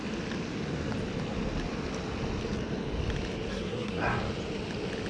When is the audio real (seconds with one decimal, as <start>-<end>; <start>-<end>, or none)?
0.0-3.5; 4.0-5.1

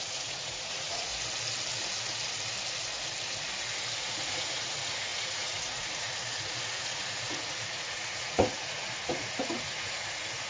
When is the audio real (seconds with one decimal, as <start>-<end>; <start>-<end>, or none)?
1.1-4.0

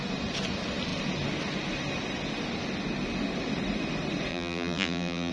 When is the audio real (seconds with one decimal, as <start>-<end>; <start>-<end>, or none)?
0.0-4.3

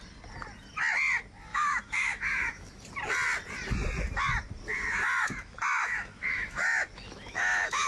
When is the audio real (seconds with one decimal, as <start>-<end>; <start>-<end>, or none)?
0.0-1.5; 2.8-4.7

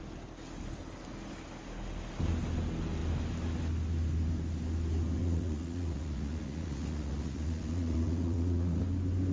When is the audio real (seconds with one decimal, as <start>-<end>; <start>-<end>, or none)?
0.0-5.2; 8.8-9.3

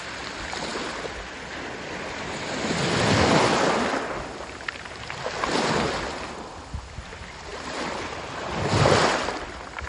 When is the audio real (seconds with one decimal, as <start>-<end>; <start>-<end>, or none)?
0.0-9.9

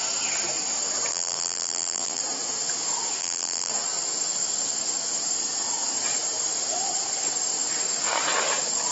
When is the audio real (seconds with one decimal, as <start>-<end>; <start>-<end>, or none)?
0.0-1.1; 2.2-3.2; 3.7-8.9

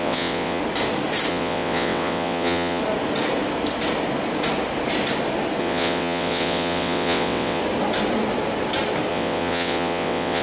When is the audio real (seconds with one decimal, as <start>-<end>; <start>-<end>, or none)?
0.6-1.3; 2.8-5.6; 7.6-9.1